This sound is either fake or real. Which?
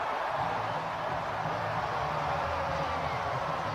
real